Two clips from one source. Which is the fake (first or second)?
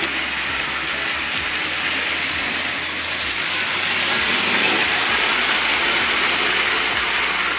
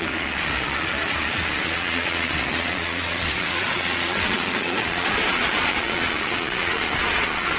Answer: second